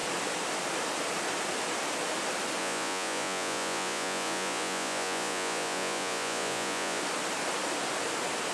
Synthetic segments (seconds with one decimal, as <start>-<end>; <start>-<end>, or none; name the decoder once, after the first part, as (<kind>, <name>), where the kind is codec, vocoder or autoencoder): 2.6-7.0 (vocoder, Vocos)